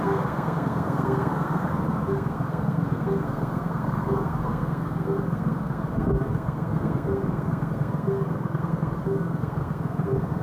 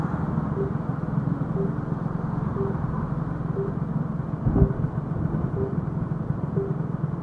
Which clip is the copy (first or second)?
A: first